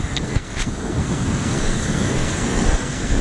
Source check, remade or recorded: remade